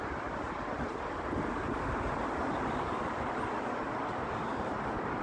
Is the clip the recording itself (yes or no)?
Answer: yes